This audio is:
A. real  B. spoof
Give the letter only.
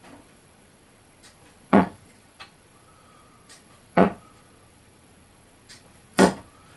B